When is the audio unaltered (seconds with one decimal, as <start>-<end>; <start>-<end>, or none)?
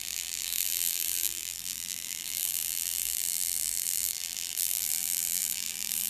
none